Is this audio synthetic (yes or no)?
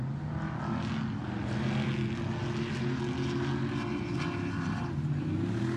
no